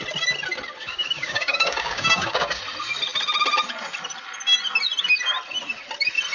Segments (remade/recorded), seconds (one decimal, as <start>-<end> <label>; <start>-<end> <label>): 0.0-0.8 recorded; 0.8-2.6 remade; 2.6-6.3 recorded

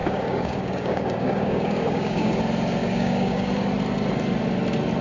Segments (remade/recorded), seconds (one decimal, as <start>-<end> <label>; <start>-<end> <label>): 0.0-2.4 remade; 2.4-2.8 recorded; 2.8-3.5 remade; 3.5-5.0 recorded

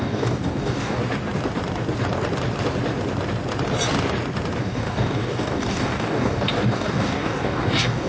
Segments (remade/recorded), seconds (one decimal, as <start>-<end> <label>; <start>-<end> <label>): 0.0-1.0 remade; 1.0-4.6 recorded; 4.6-8.1 remade

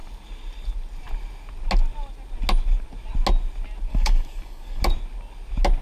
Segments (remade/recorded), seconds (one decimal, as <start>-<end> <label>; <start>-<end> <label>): 0.0-3.9 recorded; 3.9-4.8 remade; 4.8-5.8 recorded

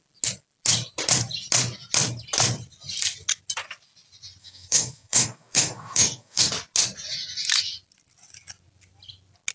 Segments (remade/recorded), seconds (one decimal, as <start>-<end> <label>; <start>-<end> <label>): 0.0-4.4 recorded; 4.4-6.5 remade; 6.5-9.5 recorded

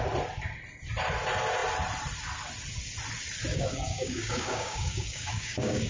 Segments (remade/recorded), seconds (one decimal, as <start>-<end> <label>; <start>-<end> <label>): 0.0-3.5 recorded; 3.5-5.9 remade

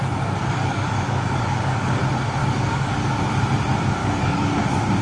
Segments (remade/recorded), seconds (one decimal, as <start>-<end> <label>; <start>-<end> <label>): 0.0-0.4 recorded; 0.4-2.0 remade; 2.0-2.4 recorded; 2.4-3.2 remade; 3.2-4.0 recorded; 4.0-4.6 remade; 4.6-5.0 recorded

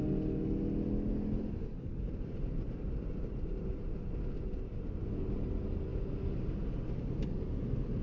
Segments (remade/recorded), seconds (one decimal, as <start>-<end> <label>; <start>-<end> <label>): 0.0-1.6 recorded; 1.6-2.1 remade; 2.1-8.0 recorded